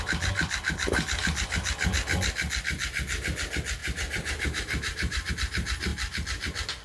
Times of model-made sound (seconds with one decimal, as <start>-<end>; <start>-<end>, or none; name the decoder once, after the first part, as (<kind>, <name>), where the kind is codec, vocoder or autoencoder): 3.8-5.3 (vocoder, BigVGAN v2)